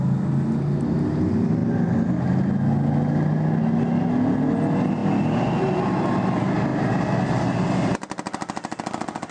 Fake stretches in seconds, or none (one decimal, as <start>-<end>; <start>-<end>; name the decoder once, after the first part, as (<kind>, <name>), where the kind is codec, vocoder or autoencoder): none